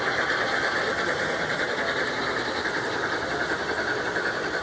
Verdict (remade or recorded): recorded